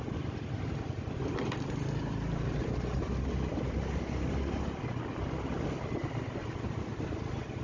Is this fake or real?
real